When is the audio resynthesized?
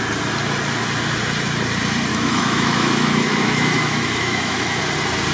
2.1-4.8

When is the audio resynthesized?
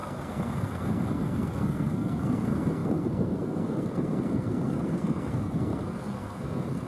0.0-6.9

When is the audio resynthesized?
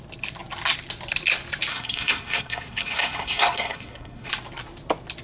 1.7-4.3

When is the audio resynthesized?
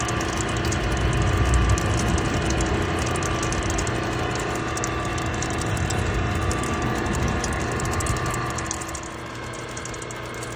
none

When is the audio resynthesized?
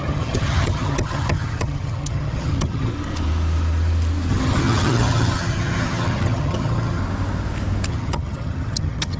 0.0-2.9; 4.3-7.0; 7.9-9.2